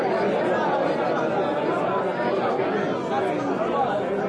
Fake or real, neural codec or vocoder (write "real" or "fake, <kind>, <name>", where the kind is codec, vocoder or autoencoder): real